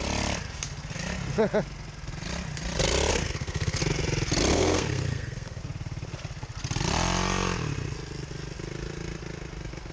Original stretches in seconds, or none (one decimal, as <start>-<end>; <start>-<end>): 0.0-3.1; 3.8-4.5; 5.6-9.9